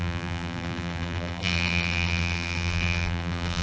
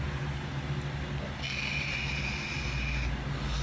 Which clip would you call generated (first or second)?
first